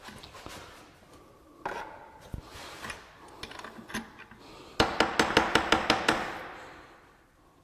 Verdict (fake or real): real